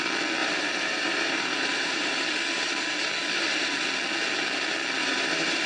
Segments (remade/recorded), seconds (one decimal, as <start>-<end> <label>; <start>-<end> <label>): 0.0-0.4 recorded; 0.4-2.2 remade; 2.2-5.0 recorded; 5.0-5.7 remade